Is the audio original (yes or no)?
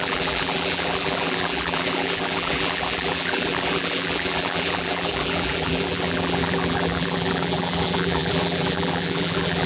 no